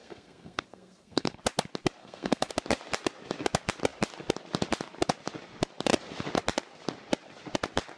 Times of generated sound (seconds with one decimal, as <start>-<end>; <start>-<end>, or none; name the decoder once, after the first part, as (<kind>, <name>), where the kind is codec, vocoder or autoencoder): 0.0-1.4 (codec, SNAC); 2.0-2.5